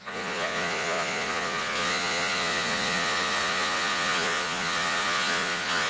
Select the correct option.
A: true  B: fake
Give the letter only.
B